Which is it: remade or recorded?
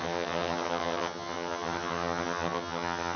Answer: remade